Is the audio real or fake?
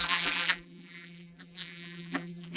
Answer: fake